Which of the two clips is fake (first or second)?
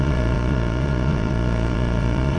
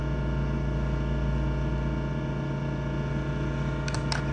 first